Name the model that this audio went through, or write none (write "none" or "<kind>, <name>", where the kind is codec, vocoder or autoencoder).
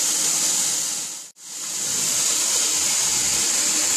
none